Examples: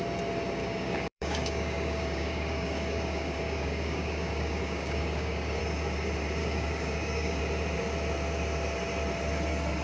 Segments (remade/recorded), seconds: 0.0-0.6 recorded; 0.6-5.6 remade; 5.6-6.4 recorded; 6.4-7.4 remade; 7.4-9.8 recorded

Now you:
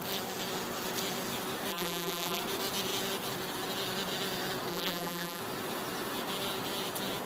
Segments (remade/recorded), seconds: 0.0-1.7 recorded; 1.7-2.4 remade; 2.4-4.7 recorded; 4.7-5.4 remade; 5.4-7.3 recorded